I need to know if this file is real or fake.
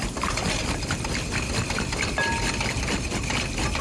real